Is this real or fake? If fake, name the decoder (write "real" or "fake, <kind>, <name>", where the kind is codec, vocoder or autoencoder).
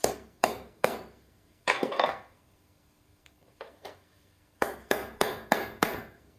fake, codec, SNAC